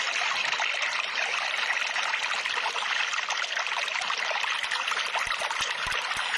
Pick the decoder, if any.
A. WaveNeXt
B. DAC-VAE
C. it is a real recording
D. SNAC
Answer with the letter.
C